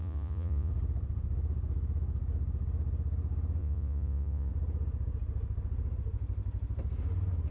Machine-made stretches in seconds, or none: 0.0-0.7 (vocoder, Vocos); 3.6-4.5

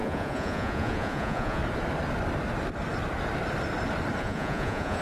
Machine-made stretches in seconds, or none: 0.0-1.6 (vocoder, Vocos); 4.2-5.0

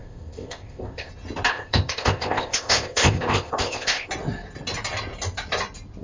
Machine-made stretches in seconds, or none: 0.0-1.1 (codec, ZipCodec); 1.5-4.1

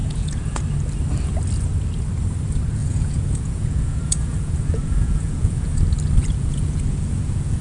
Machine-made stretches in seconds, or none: 0.0-0.6 (vocoder, Vocos); 2.8-5.8; 6.2-7.6

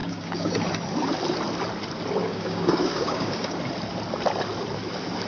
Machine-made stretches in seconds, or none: 0.0-0.5 (codec, DAC); 2.2-3.6